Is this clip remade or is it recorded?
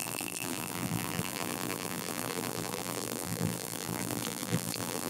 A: remade